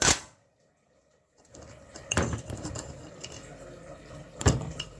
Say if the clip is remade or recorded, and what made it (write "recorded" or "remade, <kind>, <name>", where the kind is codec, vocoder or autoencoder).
remade, vocoder, BigVGAN v2